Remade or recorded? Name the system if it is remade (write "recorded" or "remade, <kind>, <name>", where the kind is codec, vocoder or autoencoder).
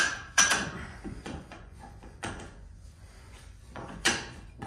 remade, vocoder, Vocos